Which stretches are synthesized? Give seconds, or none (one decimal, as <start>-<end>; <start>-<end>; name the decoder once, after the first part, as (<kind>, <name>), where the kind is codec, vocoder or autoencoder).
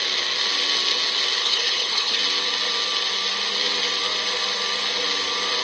1.4-2.2 (codec, HILCodec)